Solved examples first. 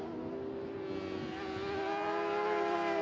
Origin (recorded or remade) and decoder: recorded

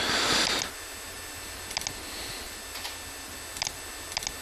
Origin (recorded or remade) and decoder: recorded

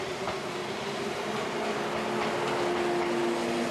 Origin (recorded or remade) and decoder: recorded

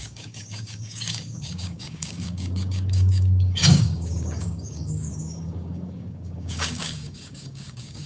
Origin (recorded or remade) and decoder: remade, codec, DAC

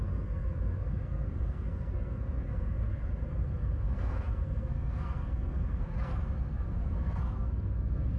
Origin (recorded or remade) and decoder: remade, codec, SNAC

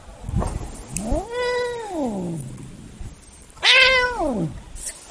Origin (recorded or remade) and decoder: recorded